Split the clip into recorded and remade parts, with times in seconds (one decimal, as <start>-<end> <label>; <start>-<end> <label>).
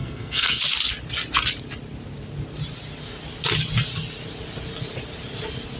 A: 0.0-0.6 remade; 0.6-5.8 recorded